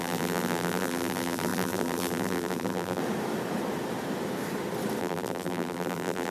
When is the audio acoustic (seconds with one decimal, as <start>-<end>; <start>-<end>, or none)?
3.0-5.0

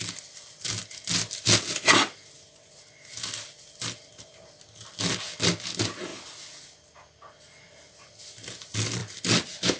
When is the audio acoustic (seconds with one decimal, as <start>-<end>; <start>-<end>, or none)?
0.0-9.8

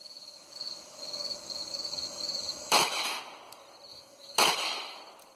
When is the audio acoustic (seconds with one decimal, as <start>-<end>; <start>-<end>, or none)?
3.2-3.9; 5.0-5.4

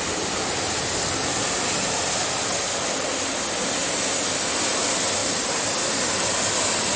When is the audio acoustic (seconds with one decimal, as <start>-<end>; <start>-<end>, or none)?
0.0-5.2; 6.1-7.0

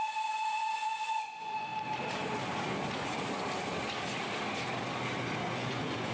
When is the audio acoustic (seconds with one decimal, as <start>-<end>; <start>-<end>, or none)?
1.7-5.4

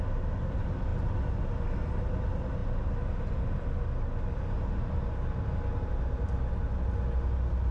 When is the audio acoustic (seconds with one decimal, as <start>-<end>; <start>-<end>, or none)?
0.0-7.7

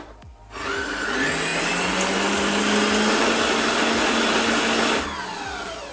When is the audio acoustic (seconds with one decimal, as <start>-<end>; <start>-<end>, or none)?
0.0-5.9

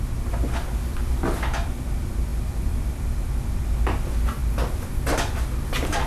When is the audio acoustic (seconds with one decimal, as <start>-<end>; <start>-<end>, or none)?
0.0-6.1